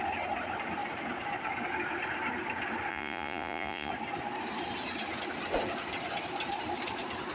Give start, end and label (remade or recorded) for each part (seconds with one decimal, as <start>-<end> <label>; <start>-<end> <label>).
0.0-2.9 recorded; 2.9-3.9 remade; 3.9-7.3 recorded

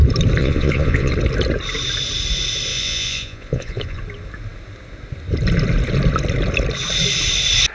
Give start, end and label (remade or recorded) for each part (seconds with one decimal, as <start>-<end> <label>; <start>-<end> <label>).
0.0-0.4 recorded; 0.4-1.1 remade; 1.1-2.7 recorded; 2.7-4.0 remade; 4.0-7.7 recorded

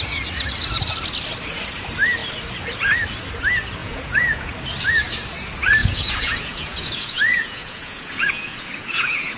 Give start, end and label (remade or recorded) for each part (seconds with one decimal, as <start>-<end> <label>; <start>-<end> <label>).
0.0-3.8 recorded; 3.8-4.5 remade; 4.5-5.8 recorded; 5.8-9.4 remade

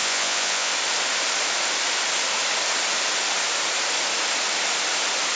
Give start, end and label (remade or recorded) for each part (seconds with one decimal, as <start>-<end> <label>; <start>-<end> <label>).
0.0-0.7 remade; 0.7-5.4 recorded

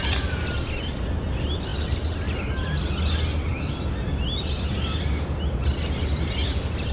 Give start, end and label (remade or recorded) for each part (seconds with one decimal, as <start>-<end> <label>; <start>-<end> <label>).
0.0-6.9 recorded